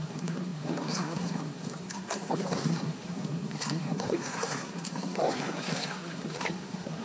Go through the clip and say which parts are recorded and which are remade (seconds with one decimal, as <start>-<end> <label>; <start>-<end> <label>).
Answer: 0.0-7.0 remade